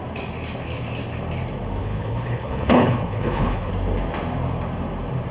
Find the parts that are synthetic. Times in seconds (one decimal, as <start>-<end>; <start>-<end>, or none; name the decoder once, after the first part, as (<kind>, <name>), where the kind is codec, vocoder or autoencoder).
1.8-3.7 (codec, HILCodec)